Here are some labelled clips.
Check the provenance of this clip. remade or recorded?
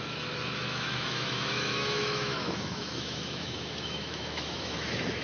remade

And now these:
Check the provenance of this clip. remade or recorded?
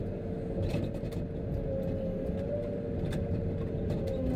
recorded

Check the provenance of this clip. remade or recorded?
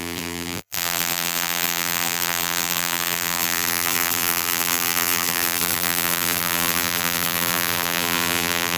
remade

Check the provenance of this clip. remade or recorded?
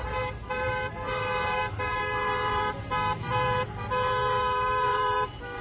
remade